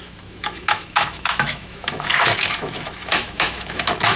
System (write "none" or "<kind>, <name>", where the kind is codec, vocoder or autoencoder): autoencoder, DAC-VAE